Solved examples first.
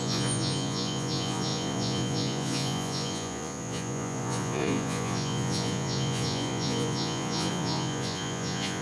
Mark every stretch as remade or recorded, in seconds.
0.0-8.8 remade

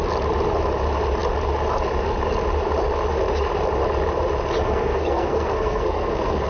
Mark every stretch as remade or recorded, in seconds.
0.0-4.6 recorded; 4.6-6.5 remade